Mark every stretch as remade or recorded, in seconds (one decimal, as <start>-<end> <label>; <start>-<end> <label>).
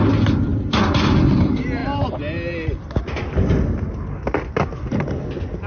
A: 0.0-5.7 recorded